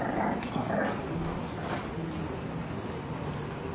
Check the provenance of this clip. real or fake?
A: real